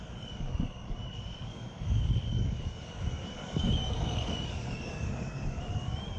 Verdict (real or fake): fake